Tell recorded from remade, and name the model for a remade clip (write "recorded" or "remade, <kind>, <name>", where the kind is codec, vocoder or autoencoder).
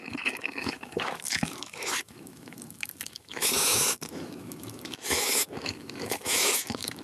remade, autoencoder, DAC-VAE